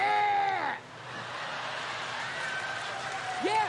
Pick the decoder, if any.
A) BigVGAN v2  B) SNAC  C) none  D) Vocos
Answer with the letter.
C